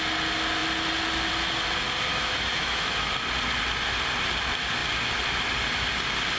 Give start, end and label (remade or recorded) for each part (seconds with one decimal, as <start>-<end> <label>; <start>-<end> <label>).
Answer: 0.0-2.1 recorded; 2.1-3.1 remade; 3.1-6.4 recorded

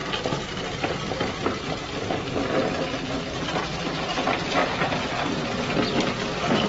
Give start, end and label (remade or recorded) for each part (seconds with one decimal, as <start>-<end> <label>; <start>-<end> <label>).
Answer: 0.0-6.7 recorded

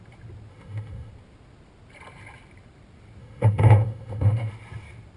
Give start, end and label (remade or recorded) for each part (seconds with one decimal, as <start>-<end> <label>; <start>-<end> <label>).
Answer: 0.0-0.5 recorded; 0.5-1.1 remade; 1.1-3.2 recorded; 3.2-4.5 remade; 4.5-5.2 recorded

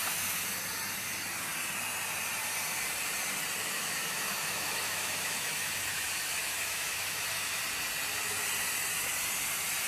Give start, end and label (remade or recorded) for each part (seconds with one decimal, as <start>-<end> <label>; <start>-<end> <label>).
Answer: 0.0-3.6 recorded; 3.6-7.6 remade; 7.6-9.9 recorded